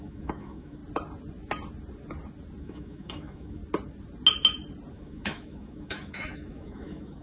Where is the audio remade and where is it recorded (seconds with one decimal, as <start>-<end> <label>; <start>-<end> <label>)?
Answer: 0.0-0.8 remade; 0.8-2.6 recorded; 2.6-3.6 remade; 3.6-4.9 recorded; 4.9-7.2 remade